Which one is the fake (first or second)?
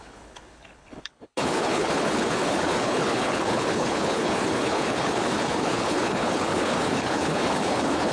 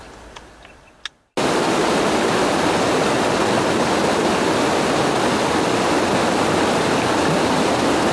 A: first